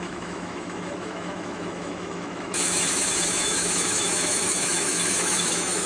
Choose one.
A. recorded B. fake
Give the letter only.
B